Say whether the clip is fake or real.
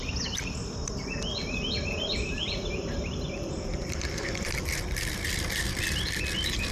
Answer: fake